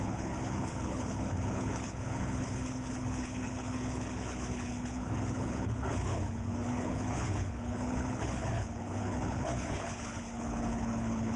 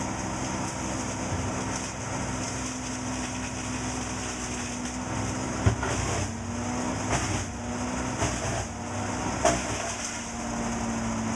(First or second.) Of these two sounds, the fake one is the first